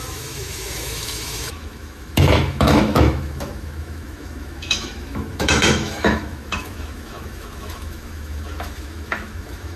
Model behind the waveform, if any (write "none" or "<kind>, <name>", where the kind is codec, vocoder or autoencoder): autoencoder, DAC-VAE